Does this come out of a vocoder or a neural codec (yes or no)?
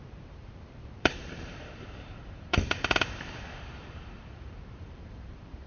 yes